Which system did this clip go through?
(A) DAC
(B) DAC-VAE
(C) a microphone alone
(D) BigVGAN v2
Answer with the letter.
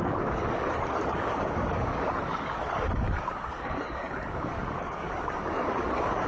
A